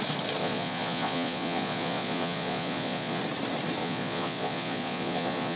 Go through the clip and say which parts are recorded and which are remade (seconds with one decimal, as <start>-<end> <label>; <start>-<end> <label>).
0.0-0.4 recorded; 0.4-3.2 remade; 3.2-3.8 recorded; 3.8-5.6 remade